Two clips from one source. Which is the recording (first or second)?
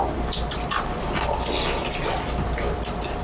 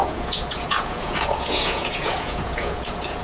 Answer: first